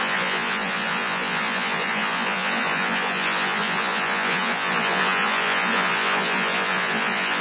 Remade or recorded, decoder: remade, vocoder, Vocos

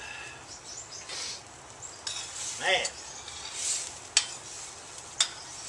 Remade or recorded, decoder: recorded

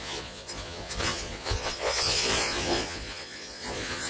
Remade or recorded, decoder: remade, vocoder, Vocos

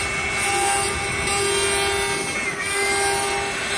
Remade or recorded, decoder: recorded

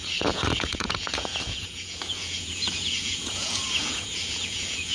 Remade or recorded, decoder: remade, vocoder, Vocos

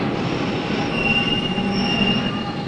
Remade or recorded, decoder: recorded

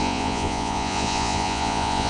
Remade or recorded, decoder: remade, vocoder, Vocos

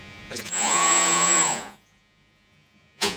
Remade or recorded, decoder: remade, vocoder, Vocos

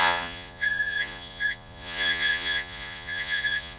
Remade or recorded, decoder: remade, vocoder, Vocos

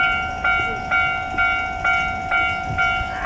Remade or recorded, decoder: recorded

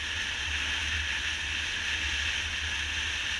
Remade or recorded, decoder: recorded